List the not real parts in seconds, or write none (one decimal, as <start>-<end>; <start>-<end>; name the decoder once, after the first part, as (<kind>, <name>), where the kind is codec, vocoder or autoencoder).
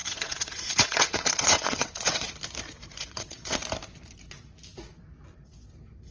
0.0-2.3 (vocoder, WaveNeXt); 3.0-3.6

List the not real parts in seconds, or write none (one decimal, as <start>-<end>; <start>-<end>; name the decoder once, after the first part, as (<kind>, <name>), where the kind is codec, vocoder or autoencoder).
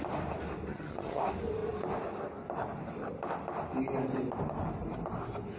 0.7-1.2 (vocoder, HiFi-GAN)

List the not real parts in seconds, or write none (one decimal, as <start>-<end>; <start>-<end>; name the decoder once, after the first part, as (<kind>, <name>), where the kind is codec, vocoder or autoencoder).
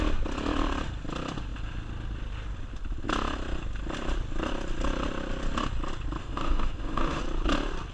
6.2-7.2 (autoencoder, DAC-VAE)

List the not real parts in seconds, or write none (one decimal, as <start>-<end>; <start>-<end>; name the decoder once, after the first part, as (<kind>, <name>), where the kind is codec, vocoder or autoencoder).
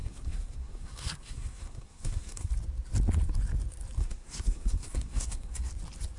0.0-2.5 (codec, SNAC); 4.0-5.7